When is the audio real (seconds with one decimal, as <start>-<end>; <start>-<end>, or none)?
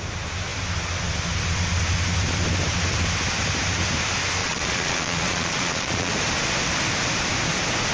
0.0-4.4; 6.1-7.9